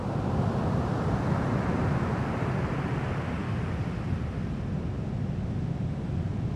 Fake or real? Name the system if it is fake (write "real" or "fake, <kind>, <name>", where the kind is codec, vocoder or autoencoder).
real